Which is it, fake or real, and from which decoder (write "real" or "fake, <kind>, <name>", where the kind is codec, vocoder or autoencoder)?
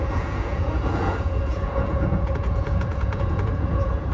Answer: fake, vocoder, Vocos